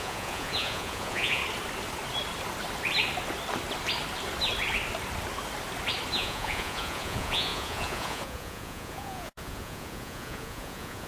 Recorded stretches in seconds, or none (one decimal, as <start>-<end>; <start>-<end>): 1.4-6.1